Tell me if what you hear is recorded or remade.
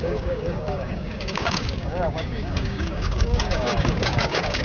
remade